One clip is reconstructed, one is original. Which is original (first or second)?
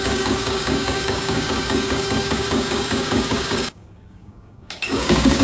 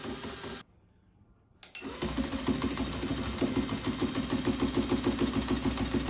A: second